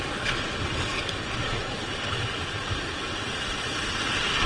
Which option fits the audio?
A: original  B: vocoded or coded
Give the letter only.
B